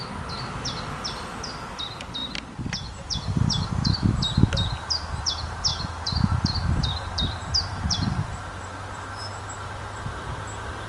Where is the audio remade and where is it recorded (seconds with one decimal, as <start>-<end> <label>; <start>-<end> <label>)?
0.0-5.7 recorded; 5.7-10.0 remade; 10.0-10.9 recorded